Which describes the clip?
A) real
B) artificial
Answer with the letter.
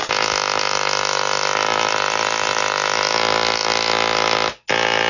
A